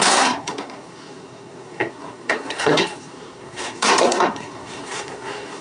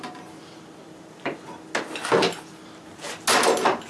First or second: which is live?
second